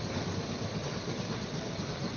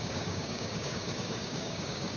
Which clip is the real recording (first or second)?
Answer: first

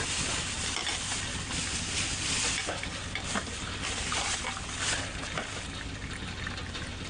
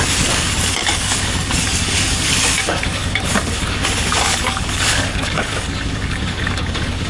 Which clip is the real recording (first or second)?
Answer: first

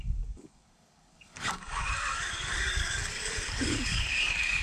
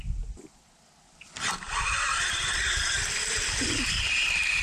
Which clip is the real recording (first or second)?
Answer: second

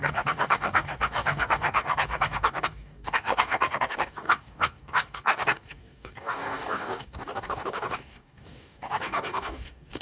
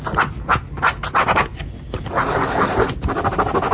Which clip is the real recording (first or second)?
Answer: second